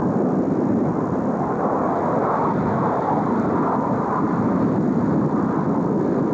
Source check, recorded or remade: remade